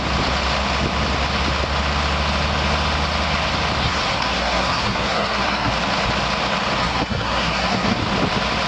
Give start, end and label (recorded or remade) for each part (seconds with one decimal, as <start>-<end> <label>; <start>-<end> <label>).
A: 0.0-3.8 recorded; 3.8-5.7 remade; 5.7-6.8 recorded; 6.8-8.0 remade; 8.0-8.7 recorded